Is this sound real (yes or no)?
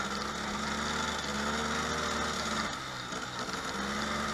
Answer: yes